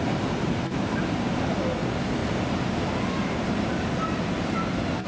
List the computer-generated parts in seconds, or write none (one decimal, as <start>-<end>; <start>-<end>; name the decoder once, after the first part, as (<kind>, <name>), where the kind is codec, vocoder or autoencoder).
none